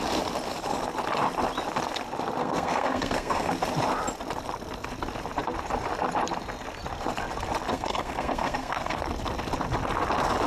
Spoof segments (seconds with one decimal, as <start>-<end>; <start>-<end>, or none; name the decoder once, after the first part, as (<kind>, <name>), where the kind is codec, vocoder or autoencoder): 2.4-3.5 (codec, SNAC); 7.7-9.0